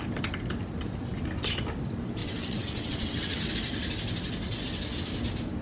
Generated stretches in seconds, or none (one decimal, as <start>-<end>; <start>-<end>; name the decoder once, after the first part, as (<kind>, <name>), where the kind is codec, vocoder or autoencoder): 2.2-3.5 (vocoder, WaveNeXt)